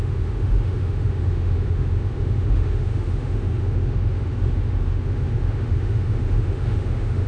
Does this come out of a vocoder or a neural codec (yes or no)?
yes